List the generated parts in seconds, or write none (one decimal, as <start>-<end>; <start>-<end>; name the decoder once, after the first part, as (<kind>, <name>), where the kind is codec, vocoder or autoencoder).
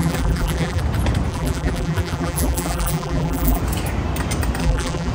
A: 0.0-0.8 (vocoder, BigVGAN v2); 1.3-3.6; 4.6-5.1